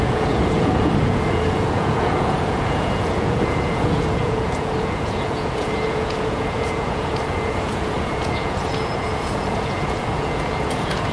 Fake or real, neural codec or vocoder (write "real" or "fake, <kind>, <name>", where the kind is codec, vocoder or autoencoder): fake, vocoder, Vocos